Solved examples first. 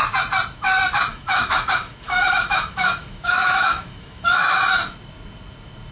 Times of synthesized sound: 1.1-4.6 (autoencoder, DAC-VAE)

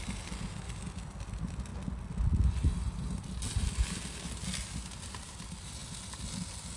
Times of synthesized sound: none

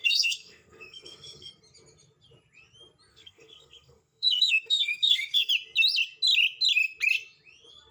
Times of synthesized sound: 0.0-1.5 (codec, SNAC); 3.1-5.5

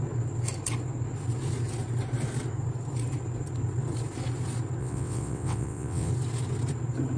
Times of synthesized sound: 4.8-6.1 (vocoder, WaveNeXt)